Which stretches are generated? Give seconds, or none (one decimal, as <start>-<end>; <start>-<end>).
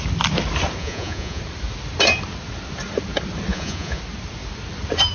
0.8-1.4; 3.5-4.0